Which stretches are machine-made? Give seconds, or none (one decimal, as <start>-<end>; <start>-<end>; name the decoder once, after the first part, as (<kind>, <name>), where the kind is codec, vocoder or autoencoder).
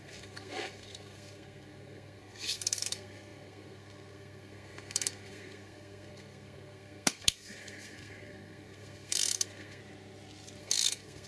0.0-9.8 (codec, SNAC); 10.6-11.3